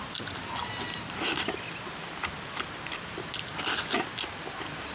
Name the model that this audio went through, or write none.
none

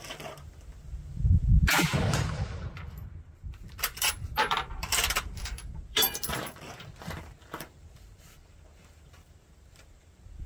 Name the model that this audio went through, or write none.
vocoder, BigVGAN v2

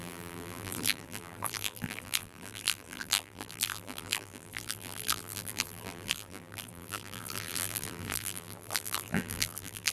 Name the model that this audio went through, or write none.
vocoder, BigVGAN v2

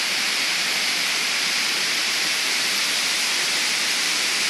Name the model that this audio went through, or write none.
vocoder, BigVGAN v2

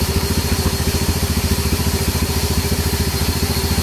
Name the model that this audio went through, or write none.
vocoder, BigVGAN v2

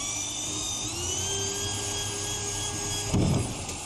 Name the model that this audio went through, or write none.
none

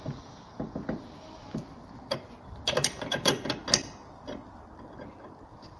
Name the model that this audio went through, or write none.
vocoder, BigVGAN v2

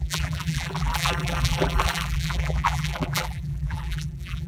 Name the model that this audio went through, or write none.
vocoder, BigVGAN v2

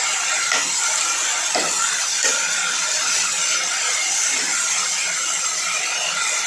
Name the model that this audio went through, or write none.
vocoder, BigVGAN v2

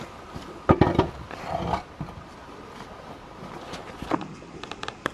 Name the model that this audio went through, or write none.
none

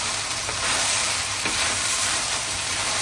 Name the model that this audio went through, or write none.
vocoder, BigVGAN v2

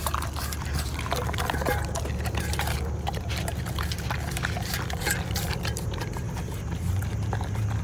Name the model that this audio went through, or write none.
none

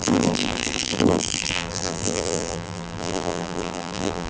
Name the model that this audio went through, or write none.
vocoder, BigVGAN v2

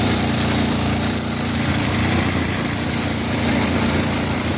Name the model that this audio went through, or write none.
vocoder, BigVGAN v2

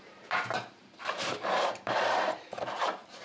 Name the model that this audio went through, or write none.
vocoder, BigVGAN v2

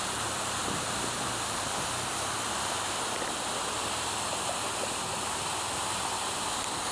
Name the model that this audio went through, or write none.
none